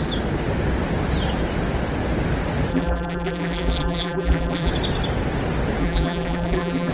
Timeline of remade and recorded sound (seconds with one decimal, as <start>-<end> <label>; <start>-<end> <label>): 0.0-2.7 recorded; 2.7-4.7 remade; 4.7-5.8 recorded; 5.8-6.9 remade